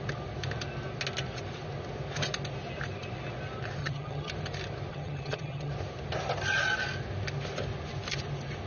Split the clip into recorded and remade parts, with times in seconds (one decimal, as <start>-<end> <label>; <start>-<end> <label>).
0.0-3.8 recorded; 3.8-4.3 remade; 4.3-4.9 recorded; 4.9-5.7 remade; 5.7-8.7 recorded

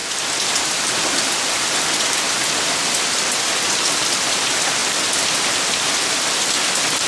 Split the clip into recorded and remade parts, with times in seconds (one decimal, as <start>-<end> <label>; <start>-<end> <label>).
0.0-7.1 recorded